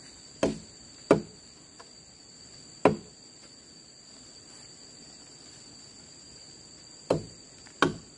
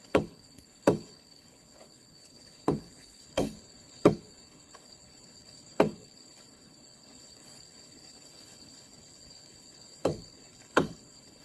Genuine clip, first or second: first